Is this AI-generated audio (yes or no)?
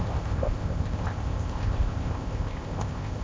yes